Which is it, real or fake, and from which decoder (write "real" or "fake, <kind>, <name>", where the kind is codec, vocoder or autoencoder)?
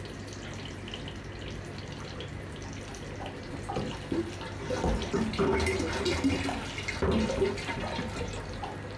real